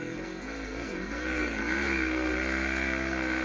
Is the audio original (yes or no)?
no